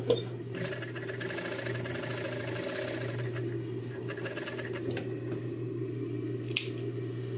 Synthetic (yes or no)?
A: no